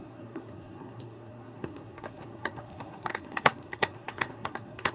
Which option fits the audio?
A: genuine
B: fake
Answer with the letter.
B